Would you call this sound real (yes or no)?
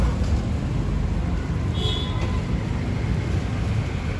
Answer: yes